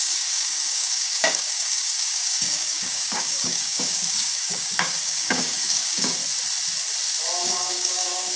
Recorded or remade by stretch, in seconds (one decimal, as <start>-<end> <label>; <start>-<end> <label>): 0.0-6.2 remade; 6.2-7.4 recorded; 7.4-8.4 remade